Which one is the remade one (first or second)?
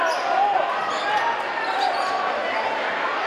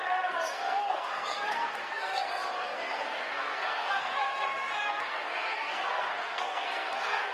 second